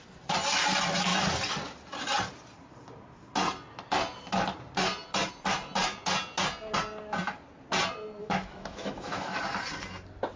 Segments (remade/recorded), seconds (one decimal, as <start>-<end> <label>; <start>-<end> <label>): 0.0-8.2 recorded; 8.2-9.4 remade; 9.4-10.4 recorded